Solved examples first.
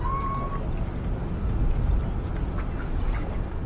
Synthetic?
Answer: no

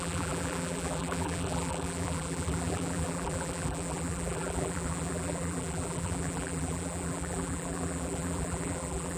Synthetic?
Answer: yes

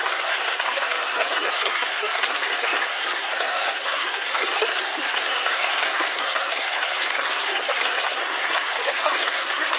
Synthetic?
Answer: yes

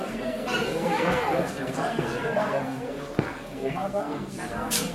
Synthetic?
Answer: yes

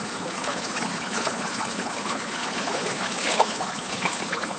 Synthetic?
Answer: yes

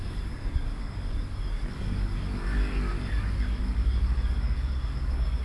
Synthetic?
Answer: yes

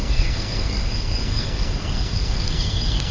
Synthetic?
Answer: yes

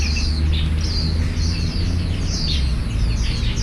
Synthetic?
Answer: no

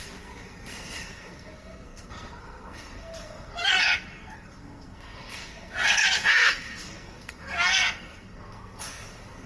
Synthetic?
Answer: yes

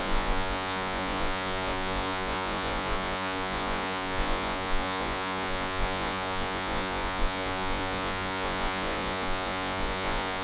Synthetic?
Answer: yes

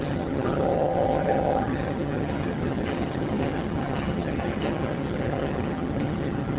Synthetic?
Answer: yes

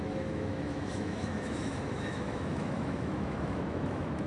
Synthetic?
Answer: yes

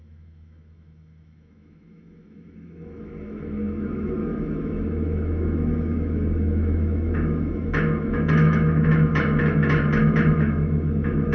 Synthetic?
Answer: yes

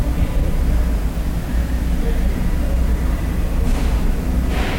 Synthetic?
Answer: no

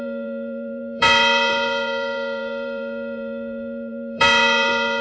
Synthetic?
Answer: yes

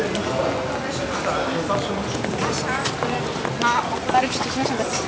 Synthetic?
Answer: no